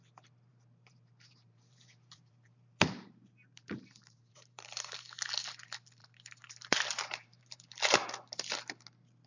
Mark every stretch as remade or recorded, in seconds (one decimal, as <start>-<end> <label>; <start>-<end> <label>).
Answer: 0.0-0.5 recorded; 0.5-4.9 remade; 4.9-6.0 recorded; 6.0-7.8 remade; 7.8-9.3 recorded